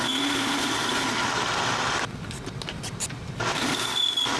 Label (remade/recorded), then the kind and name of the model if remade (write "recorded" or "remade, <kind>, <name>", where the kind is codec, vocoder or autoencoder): recorded